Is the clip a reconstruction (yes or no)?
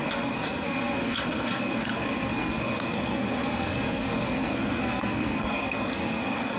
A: yes